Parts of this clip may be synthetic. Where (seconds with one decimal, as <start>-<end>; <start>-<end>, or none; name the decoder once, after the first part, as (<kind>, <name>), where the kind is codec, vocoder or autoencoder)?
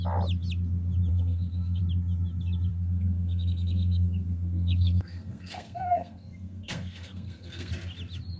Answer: 1.1-1.8 (codec, SNAC); 2.7-7.7